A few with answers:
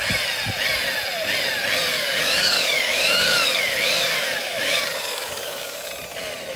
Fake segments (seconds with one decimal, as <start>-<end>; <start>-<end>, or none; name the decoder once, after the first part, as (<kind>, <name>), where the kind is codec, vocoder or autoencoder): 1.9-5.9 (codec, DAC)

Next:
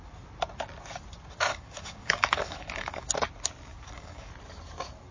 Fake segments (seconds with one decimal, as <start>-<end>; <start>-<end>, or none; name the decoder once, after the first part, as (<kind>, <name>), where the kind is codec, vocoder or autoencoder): 1.5-3.1 (codec, DAC); 3.7-4.3

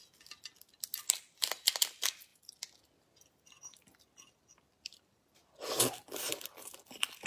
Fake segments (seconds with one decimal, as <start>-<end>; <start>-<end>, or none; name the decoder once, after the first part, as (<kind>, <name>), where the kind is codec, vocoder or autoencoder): none